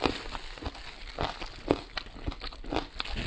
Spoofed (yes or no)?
no